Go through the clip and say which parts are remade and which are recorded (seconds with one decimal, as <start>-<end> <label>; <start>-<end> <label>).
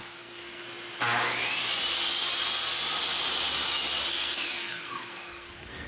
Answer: 0.0-0.6 remade; 0.6-4.1 recorded; 4.1-5.9 remade